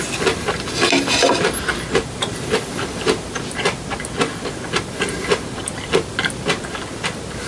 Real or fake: real